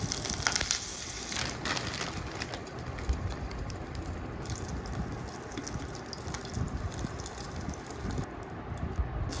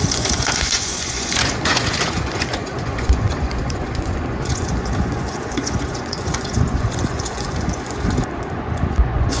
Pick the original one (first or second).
first